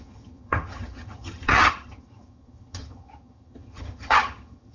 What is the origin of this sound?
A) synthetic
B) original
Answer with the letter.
A